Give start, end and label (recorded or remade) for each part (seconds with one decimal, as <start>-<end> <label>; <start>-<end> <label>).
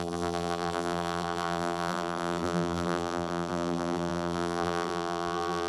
0.0-5.7 remade